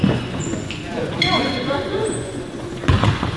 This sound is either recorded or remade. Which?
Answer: remade